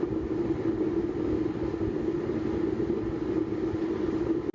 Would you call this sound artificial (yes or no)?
no